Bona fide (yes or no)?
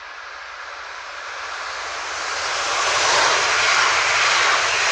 yes